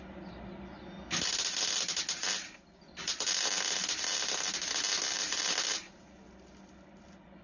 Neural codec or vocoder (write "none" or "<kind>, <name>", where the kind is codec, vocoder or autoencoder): none